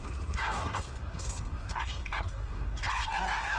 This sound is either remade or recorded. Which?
remade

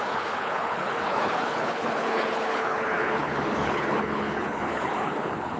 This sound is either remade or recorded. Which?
remade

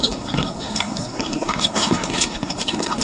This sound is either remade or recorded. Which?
remade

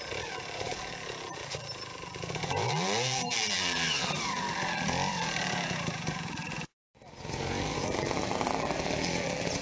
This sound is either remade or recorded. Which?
remade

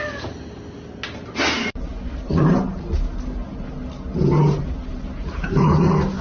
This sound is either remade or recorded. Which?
recorded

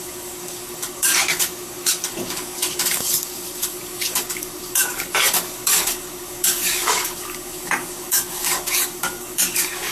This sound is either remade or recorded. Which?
remade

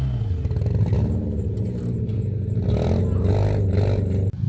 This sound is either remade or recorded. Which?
recorded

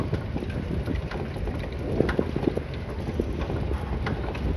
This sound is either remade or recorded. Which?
recorded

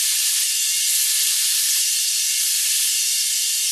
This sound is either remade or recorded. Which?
remade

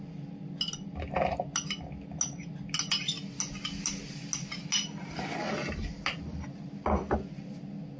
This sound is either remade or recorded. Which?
recorded